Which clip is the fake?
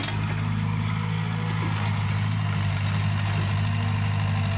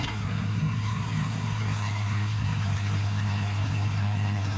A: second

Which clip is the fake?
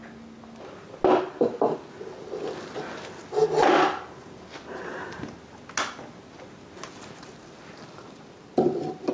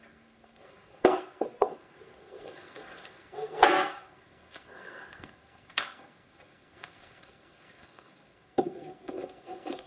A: second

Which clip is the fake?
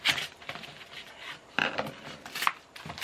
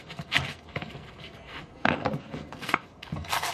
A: second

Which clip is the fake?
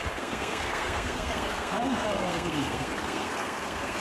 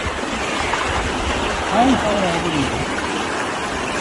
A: first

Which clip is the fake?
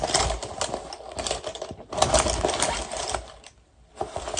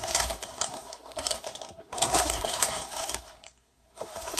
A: second